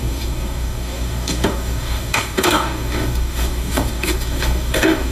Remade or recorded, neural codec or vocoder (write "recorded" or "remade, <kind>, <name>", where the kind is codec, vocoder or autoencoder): remade, codec, DAC